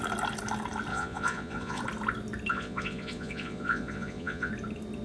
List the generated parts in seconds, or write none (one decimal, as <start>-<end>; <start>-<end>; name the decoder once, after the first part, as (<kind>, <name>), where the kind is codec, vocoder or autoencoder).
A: 0.9-1.8 (vocoder, Vocos); 2.5-4.5